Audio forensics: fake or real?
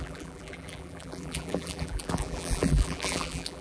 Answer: fake